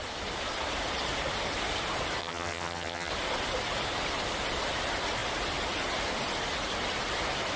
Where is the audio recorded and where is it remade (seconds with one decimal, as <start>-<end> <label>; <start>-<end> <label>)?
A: 0.0-2.2 recorded; 2.2-3.1 remade; 3.1-7.6 recorded